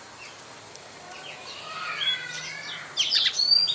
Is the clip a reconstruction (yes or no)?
no